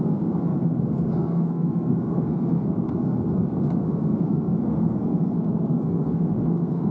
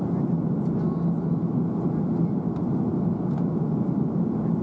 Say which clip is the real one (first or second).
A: second